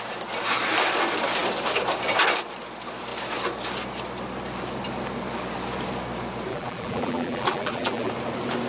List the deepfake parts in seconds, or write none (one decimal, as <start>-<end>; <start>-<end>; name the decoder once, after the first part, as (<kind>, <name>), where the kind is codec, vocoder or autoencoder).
6.5-8.1 (vocoder, BigVGAN v2)